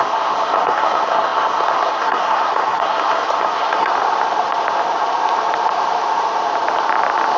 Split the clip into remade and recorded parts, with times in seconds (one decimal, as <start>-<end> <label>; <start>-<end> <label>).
0.0-3.9 remade; 3.9-7.4 recorded

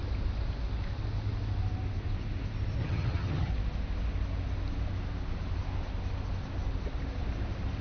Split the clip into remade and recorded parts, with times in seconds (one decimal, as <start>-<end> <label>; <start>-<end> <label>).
0.0-2.8 recorded; 2.8-3.5 remade; 3.5-7.8 recorded

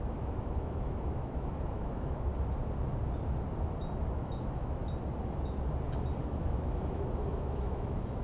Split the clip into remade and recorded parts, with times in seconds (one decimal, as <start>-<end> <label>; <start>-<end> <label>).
0.0-2.3 remade; 2.3-4.1 recorded; 4.1-4.8 remade; 4.8-6.2 recorded; 6.2-8.2 remade

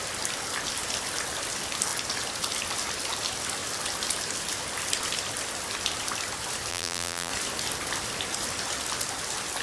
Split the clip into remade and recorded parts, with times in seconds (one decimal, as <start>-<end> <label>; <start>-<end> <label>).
0.0-6.7 recorded; 6.7-7.3 remade; 7.3-9.6 recorded

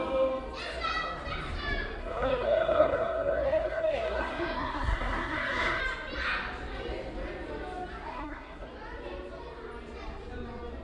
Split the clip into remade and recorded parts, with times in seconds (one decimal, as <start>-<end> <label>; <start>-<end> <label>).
0.0-2.0 recorded; 2.0-5.8 remade; 5.8-8.1 recorded; 8.1-8.7 remade; 8.7-10.8 recorded

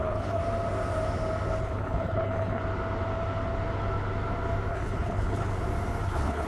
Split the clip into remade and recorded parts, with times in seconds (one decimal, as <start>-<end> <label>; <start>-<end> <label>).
0.0-0.4 remade; 0.4-1.6 recorded; 1.6-2.6 remade; 2.6-4.7 recorded; 4.7-5.5 remade; 5.5-6.0 recorded; 6.0-6.5 remade

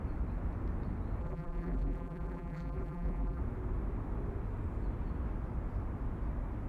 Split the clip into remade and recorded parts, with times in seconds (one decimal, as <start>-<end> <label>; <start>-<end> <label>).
0.0-1.2 recorded; 1.2-3.4 remade; 3.4-6.7 recorded